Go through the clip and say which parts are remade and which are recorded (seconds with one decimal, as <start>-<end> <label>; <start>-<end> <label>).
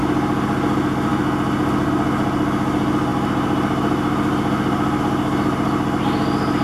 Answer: 0.0-6.6 recorded